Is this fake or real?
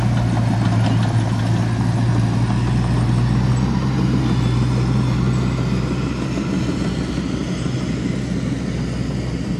real